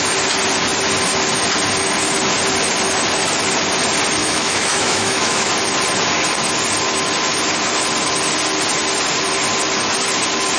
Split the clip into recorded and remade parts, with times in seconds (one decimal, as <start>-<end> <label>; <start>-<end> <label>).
0.0-4.2 recorded; 4.2-5.5 remade; 5.5-10.6 recorded